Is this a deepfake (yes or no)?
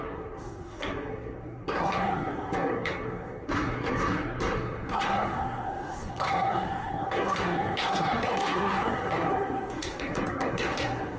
yes